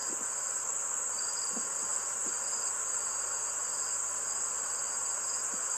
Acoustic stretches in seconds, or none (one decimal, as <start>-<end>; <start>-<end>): 0.0-5.8